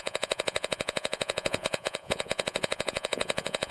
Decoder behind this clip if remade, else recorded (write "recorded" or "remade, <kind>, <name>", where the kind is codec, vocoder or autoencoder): remade, vocoder, Vocos